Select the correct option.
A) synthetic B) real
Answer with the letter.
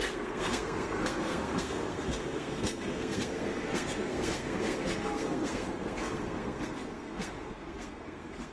A